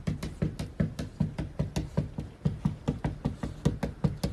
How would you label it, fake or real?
real